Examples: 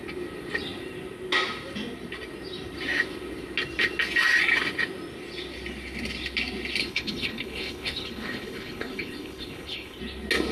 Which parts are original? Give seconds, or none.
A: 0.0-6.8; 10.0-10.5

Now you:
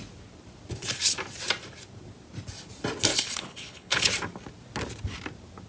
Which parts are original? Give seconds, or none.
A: 0.0-3.1; 4.1-5.7

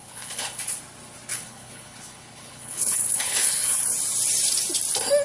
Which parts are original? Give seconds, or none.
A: 0.8-1.3; 3.8-5.2

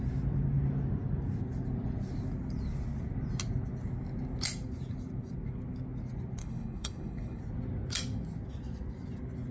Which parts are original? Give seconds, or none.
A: 0.0-6.4; 7.4-9.5

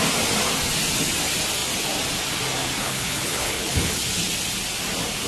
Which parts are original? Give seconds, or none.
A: 0.0-2.8; 4.0-5.3